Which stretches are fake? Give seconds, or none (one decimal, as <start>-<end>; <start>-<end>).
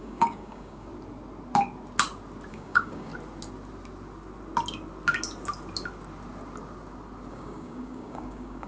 0.0-0.9; 2.5-3.1; 7.3-8.7